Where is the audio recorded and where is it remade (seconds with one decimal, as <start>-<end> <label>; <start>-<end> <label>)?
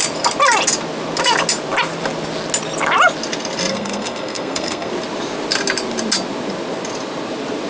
0.0-3.7 recorded; 3.7-4.9 remade; 4.9-7.7 recorded